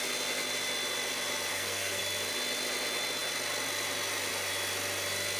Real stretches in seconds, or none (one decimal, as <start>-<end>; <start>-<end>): 0.0-1.5; 2.0-5.4

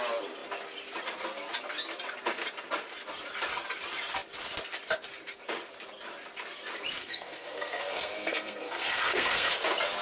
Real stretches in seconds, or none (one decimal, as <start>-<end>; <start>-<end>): 0.0-7.0; 9.5-10.0

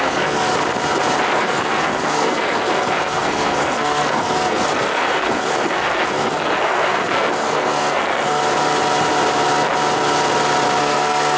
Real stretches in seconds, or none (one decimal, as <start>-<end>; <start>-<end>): 0.5-1.4; 8.4-10.8

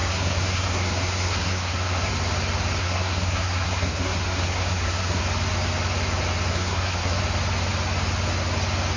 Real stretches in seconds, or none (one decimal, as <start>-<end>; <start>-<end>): 2.1-2.8; 5.2-6.5; 7.2-9.0

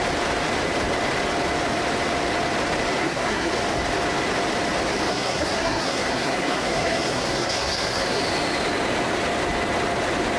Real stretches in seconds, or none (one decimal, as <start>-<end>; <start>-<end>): 0.0-3.0; 3.5-5.1; 8.2-10.4